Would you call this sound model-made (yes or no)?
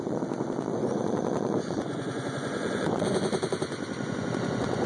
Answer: yes